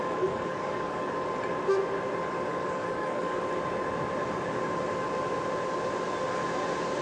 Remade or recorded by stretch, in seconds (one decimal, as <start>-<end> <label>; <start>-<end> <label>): 0.0-1.1 remade; 1.1-2.5 recorded; 2.5-3.4 remade; 3.4-7.0 recorded

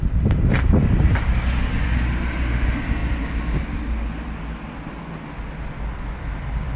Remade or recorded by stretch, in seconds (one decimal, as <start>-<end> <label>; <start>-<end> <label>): 0.0-6.8 recorded

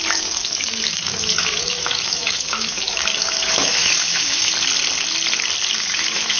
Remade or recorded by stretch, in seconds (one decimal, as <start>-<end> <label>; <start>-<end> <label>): 0.0-4.5 remade; 4.5-5.8 recorded; 5.8-6.4 remade

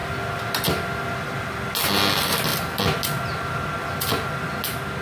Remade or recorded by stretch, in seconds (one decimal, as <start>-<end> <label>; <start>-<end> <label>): 0.0-1.4 remade; 1.4-5.0 recorded

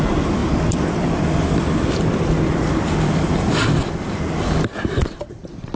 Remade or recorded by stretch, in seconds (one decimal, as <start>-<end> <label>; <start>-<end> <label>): 0.0-0.4 recorded; 0.4-3.8 remade; 3.8-5.8 recorded

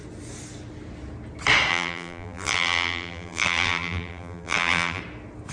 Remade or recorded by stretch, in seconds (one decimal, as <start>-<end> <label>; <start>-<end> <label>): 0.0-1.7 recorded; 1.7-5.0 remade; 5.0-5.5 recorded

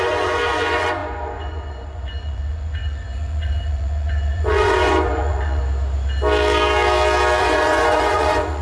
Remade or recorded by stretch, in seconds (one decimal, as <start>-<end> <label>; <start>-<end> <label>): 0.0-5.6 remade; 5.6-7.4 recorded; 7.4-8.6 remade

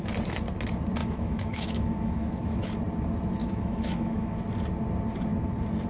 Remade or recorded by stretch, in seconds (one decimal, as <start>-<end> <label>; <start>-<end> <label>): 0.0-1.0 recorded; 1.0-2.7 remade; 2.7-3.4 recorded; 3.4-4.4 remade; 4.4-5.9 recorded